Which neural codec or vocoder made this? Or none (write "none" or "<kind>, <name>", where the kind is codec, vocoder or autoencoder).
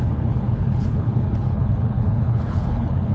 codec, HILCodec